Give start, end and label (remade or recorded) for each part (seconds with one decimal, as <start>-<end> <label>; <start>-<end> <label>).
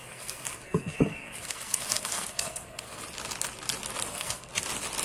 0.0-3.0 remade; 3.0-4.1 recorded; 4.1-4.6 remade; 4.6-5.0 recorded